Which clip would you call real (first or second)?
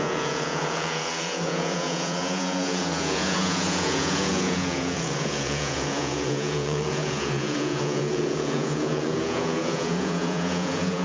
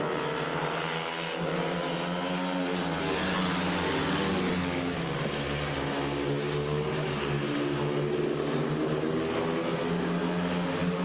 second